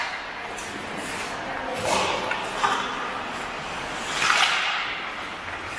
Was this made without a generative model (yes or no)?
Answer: yes